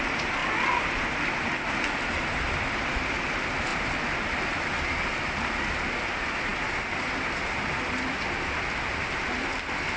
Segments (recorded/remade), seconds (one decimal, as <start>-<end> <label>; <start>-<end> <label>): 0.0-10.0 recorded